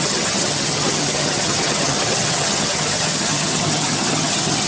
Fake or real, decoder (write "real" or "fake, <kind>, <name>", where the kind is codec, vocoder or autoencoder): fake, vocoder, HiFi-GAN